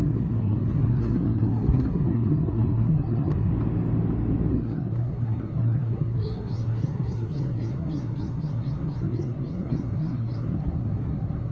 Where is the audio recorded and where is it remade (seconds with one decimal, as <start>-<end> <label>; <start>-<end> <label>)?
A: 0.0-3.5 remade; 3.5-4.5 recorded; 4.5-11.5 remade